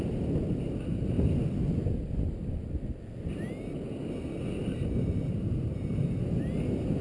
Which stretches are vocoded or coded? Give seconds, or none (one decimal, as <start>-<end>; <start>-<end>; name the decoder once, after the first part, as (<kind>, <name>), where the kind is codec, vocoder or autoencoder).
4.6-6.3 (vocoder, BigVGAN v2)